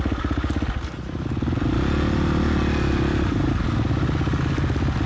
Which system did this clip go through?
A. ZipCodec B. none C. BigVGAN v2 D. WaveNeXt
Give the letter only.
B